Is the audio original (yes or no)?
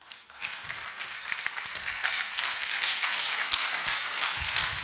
no